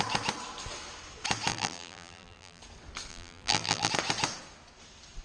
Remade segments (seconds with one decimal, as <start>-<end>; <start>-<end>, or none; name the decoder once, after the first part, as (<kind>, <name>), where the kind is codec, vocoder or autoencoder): 1.5-2.6 (vocoder, BigVGAN v2); 3.1-3.9